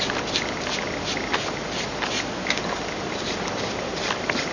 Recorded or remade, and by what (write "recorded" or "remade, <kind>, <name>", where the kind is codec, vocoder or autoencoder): recorded